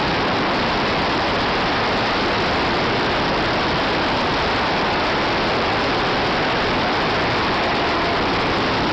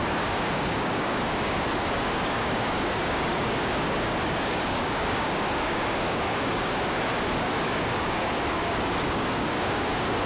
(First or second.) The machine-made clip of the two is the second